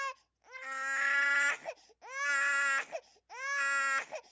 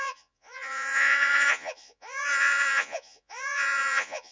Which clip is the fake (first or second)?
second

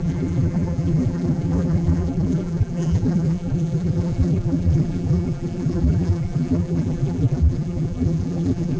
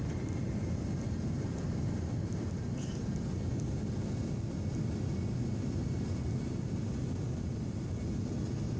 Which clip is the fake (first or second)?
first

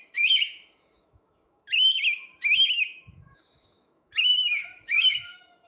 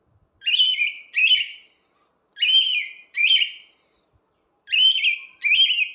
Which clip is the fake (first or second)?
first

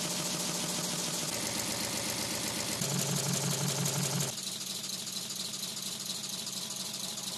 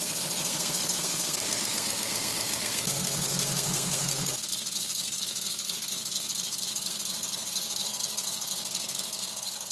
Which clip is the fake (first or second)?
second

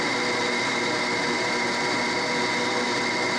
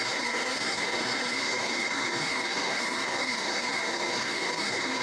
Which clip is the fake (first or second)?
second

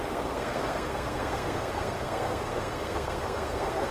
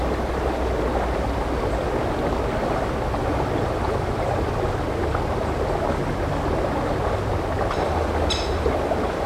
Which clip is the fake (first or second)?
first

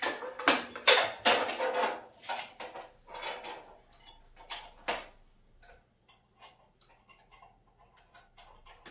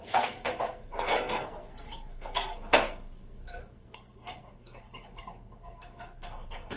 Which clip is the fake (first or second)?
second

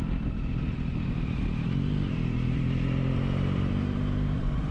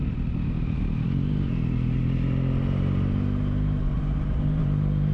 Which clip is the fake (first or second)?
first